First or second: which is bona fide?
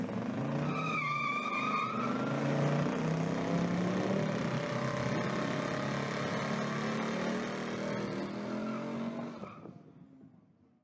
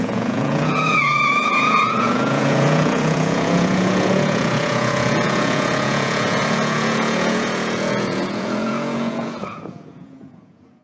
first